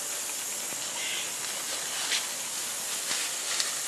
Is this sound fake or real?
real